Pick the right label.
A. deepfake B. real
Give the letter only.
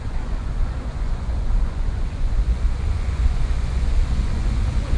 A